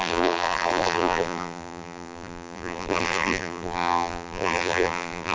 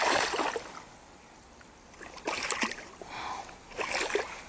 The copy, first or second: first